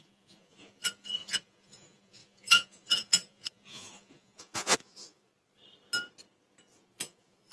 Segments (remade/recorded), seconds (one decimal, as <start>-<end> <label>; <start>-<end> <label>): 0.0-5.3 remade; 5.3-6.8 recorded; 6.8-7.5 remade